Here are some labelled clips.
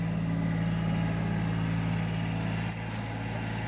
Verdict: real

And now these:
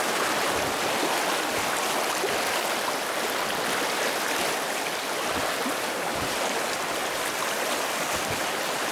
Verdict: real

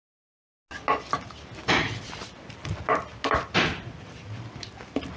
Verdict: real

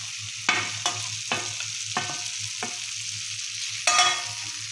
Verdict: real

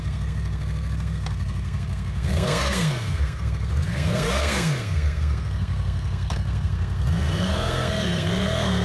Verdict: fake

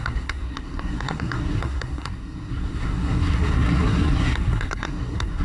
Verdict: fake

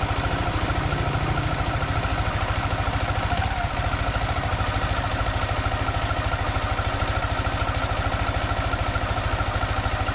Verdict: real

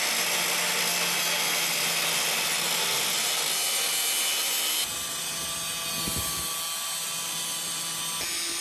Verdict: real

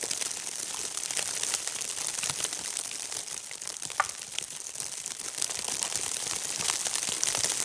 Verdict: real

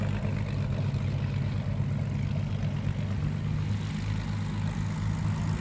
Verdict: real